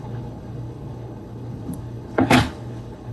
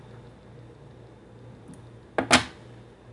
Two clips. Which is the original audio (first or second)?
second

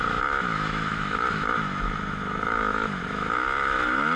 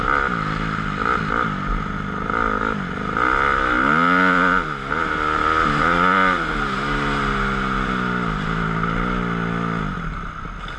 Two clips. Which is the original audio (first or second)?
second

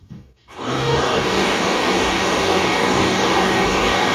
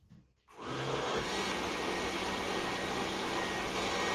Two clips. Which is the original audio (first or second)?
second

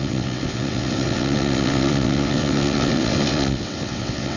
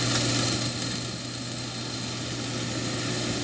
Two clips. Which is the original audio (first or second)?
second